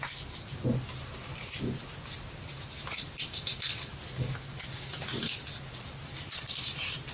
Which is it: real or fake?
real